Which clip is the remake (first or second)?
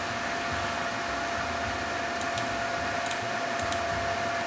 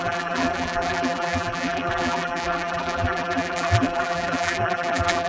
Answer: second